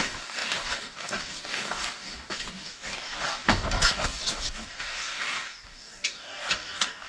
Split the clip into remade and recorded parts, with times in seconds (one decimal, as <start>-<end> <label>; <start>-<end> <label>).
0.0-7.1 remade